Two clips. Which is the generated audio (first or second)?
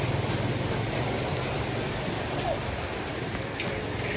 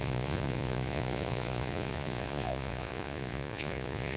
second